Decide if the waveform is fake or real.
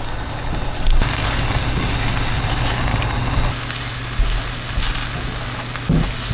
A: real